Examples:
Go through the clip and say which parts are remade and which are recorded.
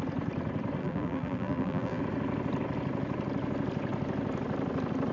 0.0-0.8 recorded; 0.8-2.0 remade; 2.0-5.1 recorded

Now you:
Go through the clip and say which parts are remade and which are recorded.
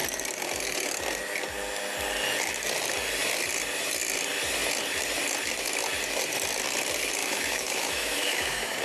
0.0-7.2 recorded; 7.2-8.8 remade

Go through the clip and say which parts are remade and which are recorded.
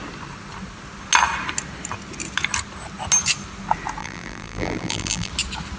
0.0-4.0 recorded; 4.0-5.3 remade; 5.3-5.8 recorded